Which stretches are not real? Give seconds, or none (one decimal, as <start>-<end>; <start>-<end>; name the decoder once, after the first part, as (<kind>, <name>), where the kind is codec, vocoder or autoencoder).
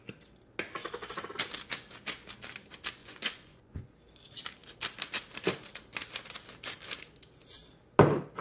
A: 3.0-3.9 (vocoder, Vocos)